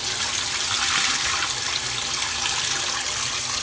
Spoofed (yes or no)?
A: yes